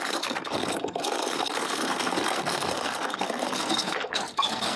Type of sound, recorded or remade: remade